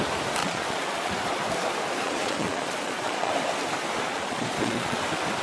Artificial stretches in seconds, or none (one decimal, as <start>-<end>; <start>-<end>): 0.4-1.1; 2.0-3.3; 4.1-5.0